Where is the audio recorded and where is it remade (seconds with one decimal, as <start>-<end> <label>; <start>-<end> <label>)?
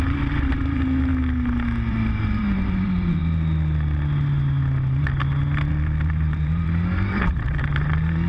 0.0-1.1 remade; 1.1-1.9 recorded; 1.9-3.2 remade; 3.2-5.7 recorded; 5.7-8.3 remade